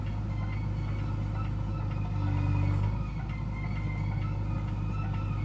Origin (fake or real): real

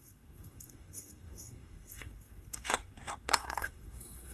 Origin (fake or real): fake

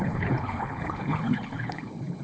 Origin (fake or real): fake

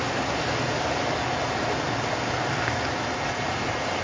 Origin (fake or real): real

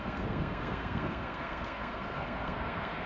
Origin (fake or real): fake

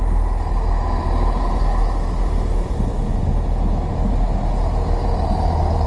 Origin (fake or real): real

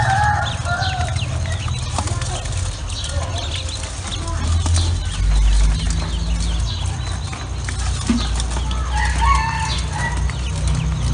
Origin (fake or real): real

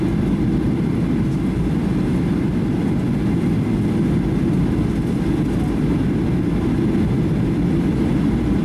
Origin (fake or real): real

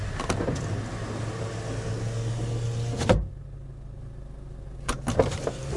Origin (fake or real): real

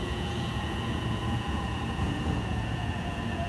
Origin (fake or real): fake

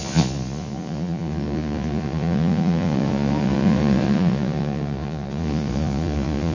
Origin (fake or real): fake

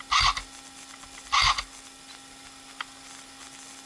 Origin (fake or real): real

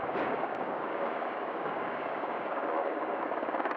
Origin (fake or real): fake